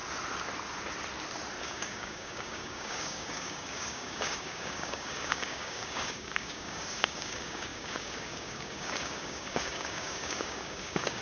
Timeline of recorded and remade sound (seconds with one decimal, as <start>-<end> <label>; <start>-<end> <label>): 0.0-1.6 recorded; 1.6-11.2 remade